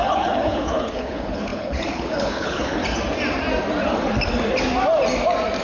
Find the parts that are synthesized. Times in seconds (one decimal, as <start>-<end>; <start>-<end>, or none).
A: 0.0-2.8

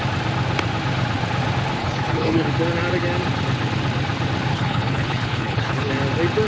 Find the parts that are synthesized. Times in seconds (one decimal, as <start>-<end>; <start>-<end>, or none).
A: 1.8-2.5; 4.5-5.9

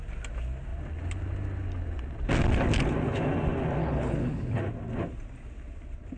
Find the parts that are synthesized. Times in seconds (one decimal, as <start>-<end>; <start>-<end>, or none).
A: 3.8-4.6

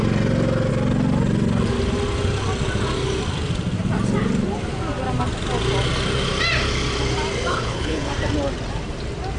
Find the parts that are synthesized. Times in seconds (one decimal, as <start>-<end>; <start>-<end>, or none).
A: 7.5-8.1

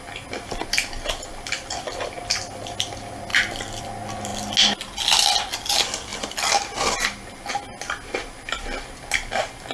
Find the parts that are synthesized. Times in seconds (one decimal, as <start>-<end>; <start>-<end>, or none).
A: none

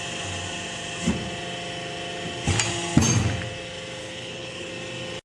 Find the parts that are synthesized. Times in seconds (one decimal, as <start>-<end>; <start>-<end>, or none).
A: 4.0-4.7

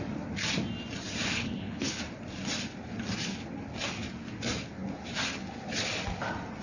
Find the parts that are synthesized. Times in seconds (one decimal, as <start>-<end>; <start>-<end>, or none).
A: 1.4-2.0

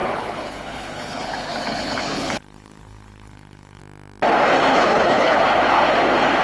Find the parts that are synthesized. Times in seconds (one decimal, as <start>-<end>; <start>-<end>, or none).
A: 0.0-3.8; 4.7-5.4